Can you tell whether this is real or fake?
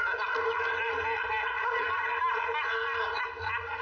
real